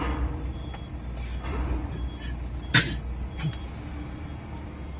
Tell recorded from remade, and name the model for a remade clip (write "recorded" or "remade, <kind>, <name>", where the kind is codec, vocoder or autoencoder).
recorded